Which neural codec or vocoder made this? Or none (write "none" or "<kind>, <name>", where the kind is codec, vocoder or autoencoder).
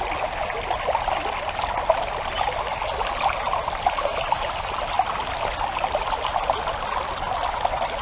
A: none